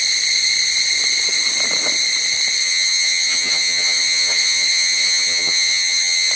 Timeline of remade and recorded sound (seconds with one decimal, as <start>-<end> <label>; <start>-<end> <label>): 0.0-2.6 recorded; 2.6-6.3 remade